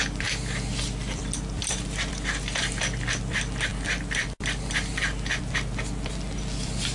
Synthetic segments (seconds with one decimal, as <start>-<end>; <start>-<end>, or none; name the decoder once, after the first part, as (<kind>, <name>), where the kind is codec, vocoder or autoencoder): none